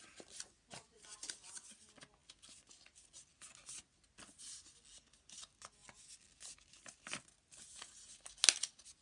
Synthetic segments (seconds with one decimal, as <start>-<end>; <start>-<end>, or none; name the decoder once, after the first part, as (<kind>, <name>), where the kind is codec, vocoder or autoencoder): none